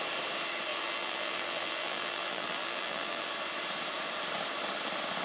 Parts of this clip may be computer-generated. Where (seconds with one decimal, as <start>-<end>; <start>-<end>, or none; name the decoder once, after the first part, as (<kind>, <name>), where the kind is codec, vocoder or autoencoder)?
0.7-3.3 (vocoder, BigVGAN v2)